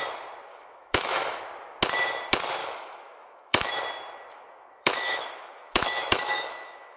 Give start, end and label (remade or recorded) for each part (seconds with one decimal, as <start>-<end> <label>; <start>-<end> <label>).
0.0-0.5 recorded; 0.5-1.4 remade; 1.4-2.6 recorded; 2.6-3.7 remade; 3.7-4.3 recorded; 4.3-7.0 remade